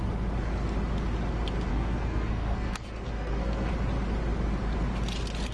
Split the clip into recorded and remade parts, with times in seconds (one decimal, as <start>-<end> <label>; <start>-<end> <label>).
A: 0.0-1.7 recorded; 1.7-3.7 remade; 3.7-5.5 recorded